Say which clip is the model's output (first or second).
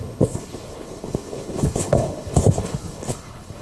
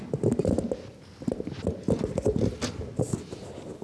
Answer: first